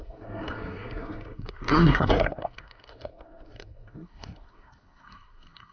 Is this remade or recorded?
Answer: remade